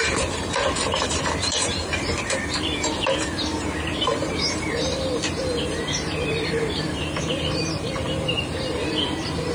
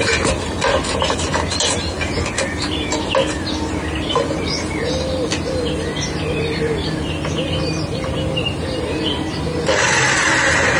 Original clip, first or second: second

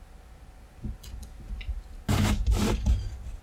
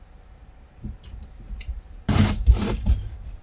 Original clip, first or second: first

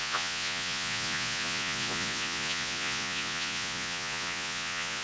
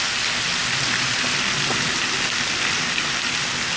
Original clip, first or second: second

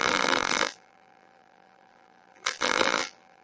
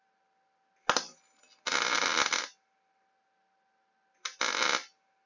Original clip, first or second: second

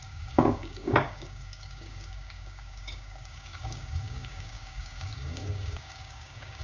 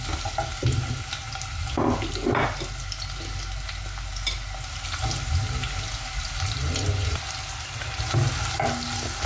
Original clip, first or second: second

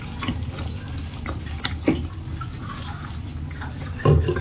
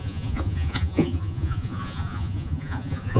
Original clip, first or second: first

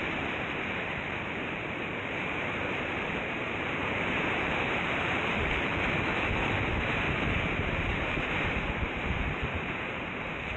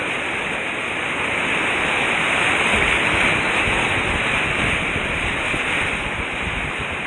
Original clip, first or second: second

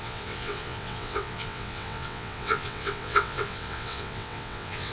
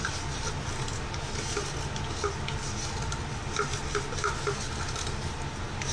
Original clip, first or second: second